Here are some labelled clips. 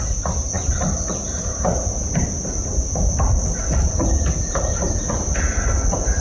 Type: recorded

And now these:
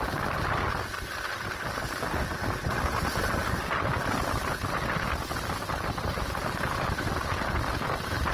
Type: recorded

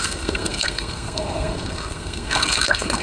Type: remade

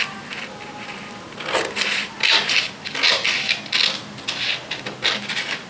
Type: recorded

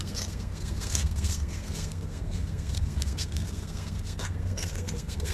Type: remade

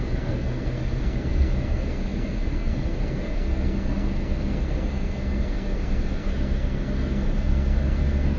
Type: remade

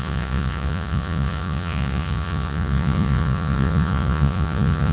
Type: remade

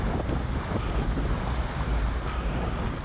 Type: recorded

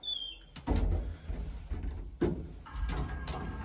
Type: recorded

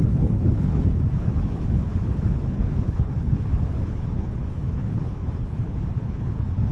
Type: remade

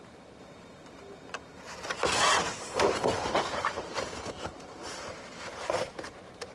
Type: remade